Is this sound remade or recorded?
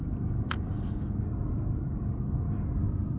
recorded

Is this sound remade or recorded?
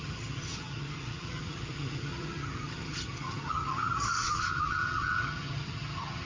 remade